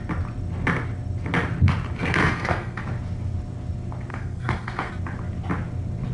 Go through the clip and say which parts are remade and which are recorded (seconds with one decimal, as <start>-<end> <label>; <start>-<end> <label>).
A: 0.0-2.2 recorded; 2.2-2.8 remade; 2.8-4.1 recorded; 4.1-4.9 remade; 4.9-6.1 recorded